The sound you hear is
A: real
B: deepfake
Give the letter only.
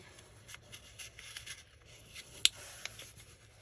A